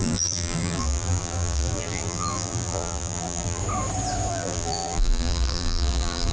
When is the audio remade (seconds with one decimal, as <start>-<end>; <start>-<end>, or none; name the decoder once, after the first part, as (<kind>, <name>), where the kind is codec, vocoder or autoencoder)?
0.0-3.6 (vocoder, BigVGAN v2); 4.3-6.3